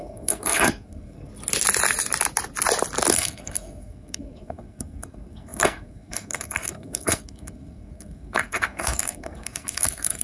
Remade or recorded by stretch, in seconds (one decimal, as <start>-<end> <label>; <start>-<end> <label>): 0.0-1.3 remade; 1.3-3.1 recorded; 3.1-10.2 remade